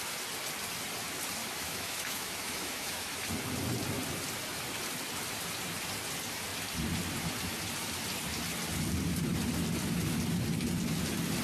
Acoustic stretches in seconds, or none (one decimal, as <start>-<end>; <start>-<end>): 0.0-1.4; 3.3-11.4